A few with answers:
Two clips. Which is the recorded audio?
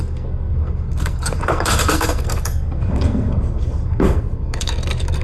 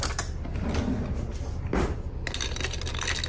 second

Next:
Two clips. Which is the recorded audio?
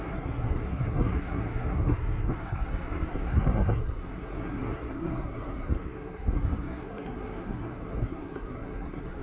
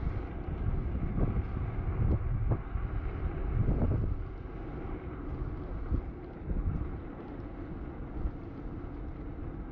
second